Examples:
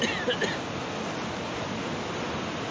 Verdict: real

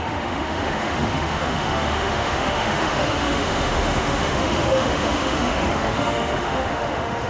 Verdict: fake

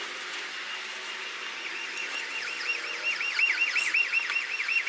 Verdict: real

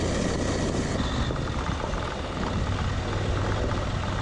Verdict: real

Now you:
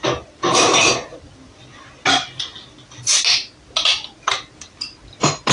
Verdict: real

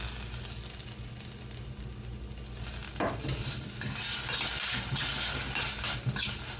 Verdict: real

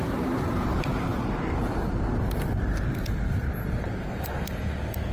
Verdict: real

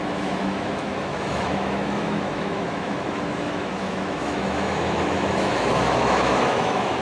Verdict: fake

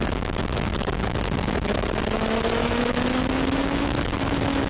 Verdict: fake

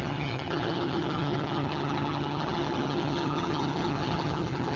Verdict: fake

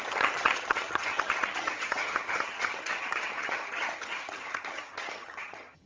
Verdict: fake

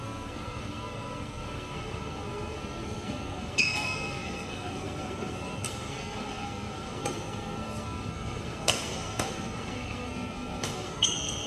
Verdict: fake